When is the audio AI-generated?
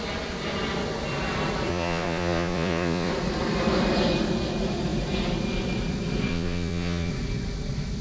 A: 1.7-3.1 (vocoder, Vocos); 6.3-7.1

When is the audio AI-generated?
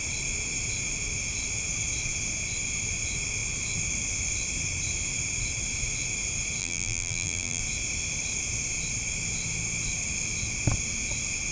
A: 6.6-7.6 (vocoder, BigVGAN v2)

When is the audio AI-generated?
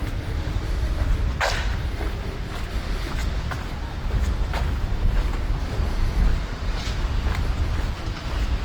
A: 6.3-7.0 (vocoder, BigVGAN v2)